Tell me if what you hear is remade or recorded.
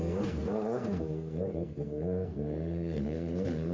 remade